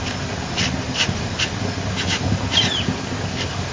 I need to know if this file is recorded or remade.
recorded